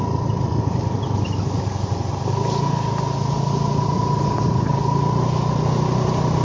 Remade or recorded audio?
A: recorded